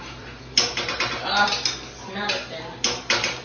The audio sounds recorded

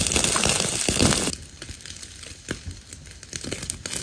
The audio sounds recorded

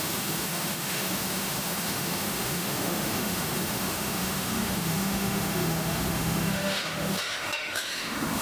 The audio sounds remade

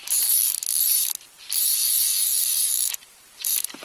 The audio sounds remade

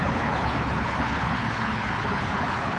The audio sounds remade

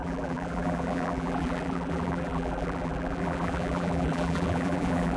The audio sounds remade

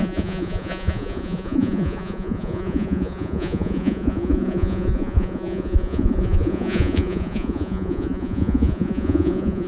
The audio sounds remade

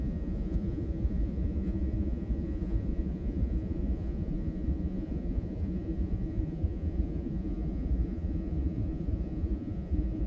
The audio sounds remade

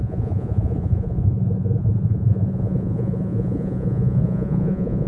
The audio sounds remade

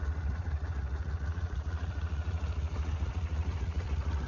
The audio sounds remade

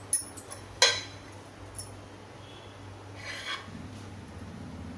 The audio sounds recorded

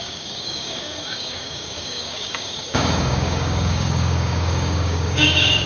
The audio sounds remade